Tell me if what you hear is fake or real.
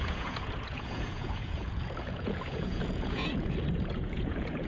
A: fake